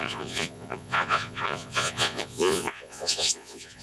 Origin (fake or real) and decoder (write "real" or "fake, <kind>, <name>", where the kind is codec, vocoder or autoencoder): fake, vocoder, Vocos